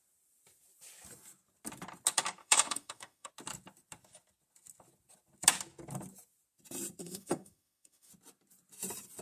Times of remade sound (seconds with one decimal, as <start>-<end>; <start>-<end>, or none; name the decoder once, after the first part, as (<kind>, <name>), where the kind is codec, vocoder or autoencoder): 2.4-3.3 (autoencoder, DAC-VAE); 7.0-8.1